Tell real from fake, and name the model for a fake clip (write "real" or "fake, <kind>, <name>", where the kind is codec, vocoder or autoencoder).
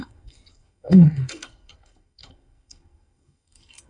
fake, codec, SNAC